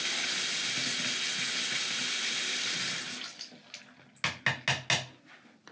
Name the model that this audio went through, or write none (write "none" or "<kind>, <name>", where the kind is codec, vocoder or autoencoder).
none